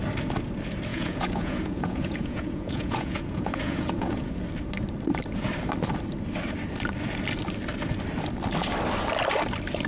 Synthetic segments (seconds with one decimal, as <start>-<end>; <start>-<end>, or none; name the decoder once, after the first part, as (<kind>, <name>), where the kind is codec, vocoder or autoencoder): 0.9-4.3 (vocoder, Vocos)